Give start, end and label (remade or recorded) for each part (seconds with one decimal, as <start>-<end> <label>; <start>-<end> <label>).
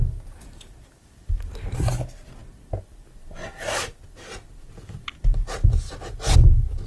0.0-6.9 recorded